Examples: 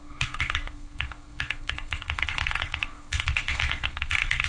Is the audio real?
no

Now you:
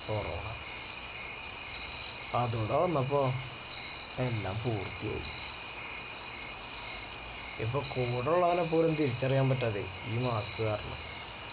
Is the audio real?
yes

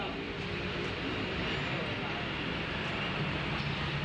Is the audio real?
no